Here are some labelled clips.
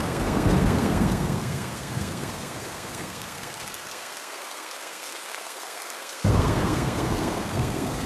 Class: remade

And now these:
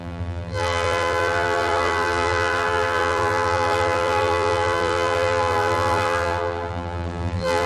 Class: remade